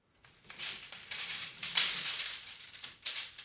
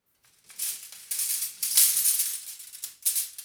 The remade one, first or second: first